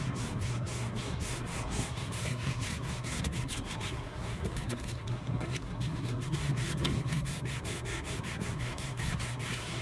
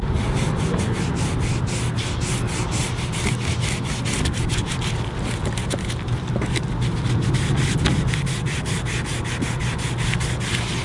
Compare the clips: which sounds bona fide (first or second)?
second